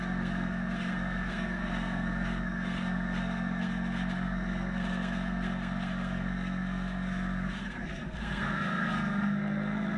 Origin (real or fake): fake